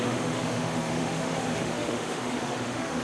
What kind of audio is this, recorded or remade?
remade